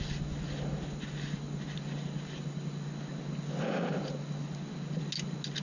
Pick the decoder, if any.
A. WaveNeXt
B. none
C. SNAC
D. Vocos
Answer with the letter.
B